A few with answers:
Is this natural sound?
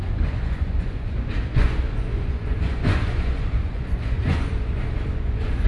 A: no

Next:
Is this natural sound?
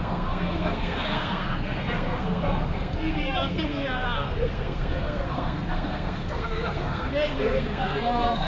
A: no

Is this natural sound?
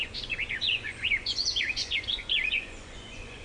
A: no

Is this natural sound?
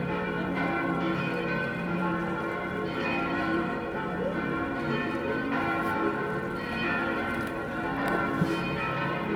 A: no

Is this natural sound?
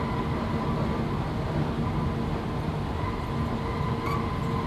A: yes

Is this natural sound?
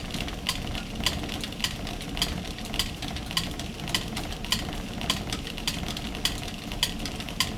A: yes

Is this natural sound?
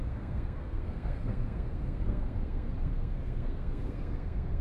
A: no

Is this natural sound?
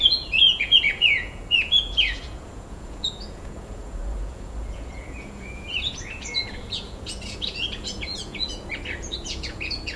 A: no